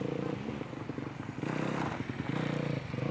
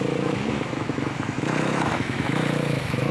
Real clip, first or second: first